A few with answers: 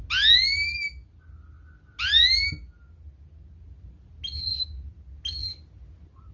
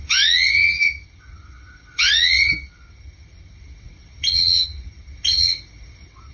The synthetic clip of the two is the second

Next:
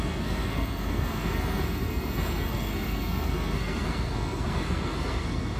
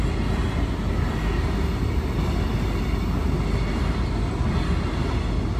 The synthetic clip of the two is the first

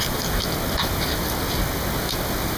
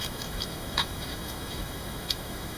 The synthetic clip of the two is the second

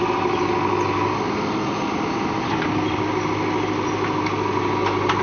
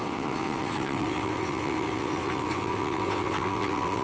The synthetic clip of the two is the second